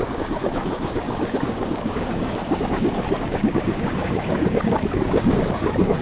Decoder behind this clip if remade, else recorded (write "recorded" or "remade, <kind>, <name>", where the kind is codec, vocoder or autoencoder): remade, codec, DAC